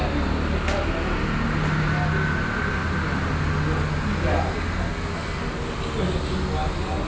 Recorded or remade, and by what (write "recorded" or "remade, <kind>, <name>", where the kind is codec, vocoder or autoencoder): recorded